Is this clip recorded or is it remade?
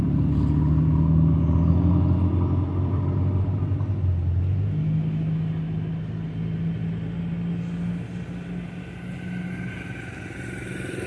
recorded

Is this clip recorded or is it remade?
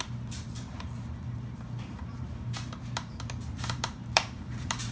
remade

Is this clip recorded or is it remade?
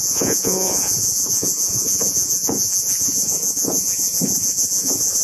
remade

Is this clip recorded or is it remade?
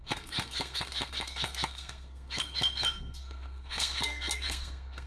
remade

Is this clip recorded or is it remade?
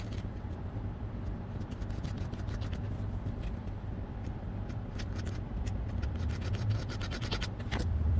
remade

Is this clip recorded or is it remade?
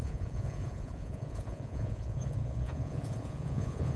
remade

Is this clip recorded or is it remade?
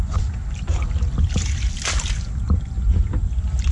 recorded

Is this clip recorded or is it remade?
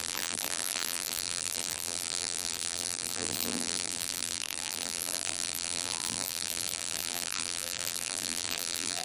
remade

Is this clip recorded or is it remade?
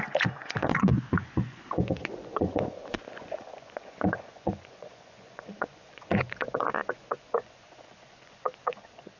remade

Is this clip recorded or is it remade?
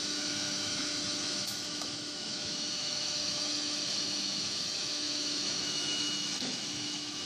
remade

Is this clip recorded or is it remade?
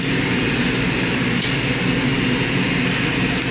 recorded